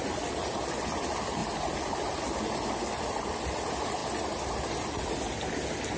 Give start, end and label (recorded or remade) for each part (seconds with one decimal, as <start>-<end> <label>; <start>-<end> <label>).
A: 0.0-6.0 recorded